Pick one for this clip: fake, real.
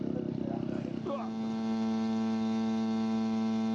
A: real